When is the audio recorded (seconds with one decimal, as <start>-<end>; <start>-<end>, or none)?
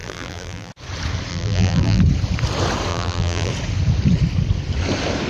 0.7-1.3; 2.0-2.9; 3.5-5.3